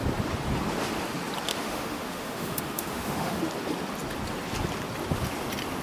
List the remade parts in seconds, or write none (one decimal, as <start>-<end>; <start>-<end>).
1.5-3.4